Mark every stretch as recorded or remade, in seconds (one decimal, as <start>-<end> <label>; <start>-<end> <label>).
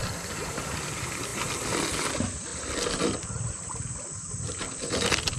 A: 0.0-5.4 recorded